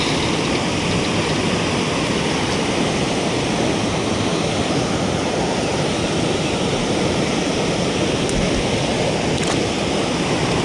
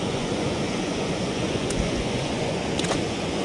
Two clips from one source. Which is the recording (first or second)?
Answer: first